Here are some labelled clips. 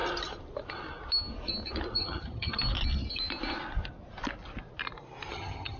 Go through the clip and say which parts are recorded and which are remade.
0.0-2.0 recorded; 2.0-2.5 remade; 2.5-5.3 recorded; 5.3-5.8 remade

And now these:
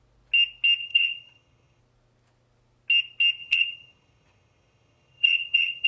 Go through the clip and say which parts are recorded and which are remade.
0.0-0.8 recorded; 0.8-1.8 remade; 1.8-3.4 recorded; 3.4-5.9 remade